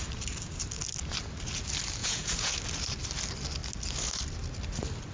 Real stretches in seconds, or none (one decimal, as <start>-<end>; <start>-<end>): 0.0-2.0; 2.5-5.1

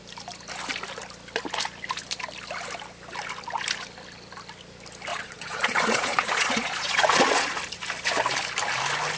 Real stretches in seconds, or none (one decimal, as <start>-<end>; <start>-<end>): 0.0-5.1; 7.6-9.2